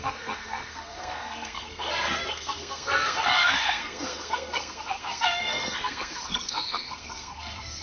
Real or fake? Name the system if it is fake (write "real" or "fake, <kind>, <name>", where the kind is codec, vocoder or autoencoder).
fake, codec, SNAC